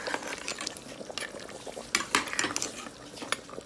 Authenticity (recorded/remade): recorded